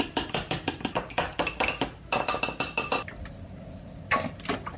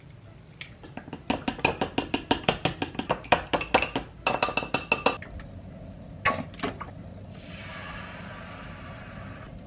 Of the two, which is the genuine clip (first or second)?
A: second